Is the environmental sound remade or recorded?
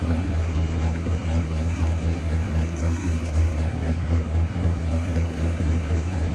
remade